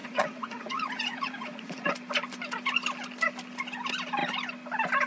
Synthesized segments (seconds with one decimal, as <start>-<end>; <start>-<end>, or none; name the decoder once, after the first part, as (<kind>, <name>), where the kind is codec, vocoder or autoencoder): 0.0-1.9 (vocoder, Vocos)